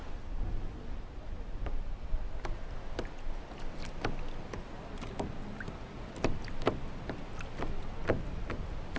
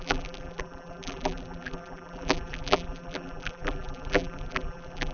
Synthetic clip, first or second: second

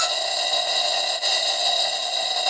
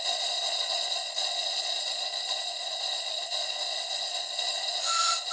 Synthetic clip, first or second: second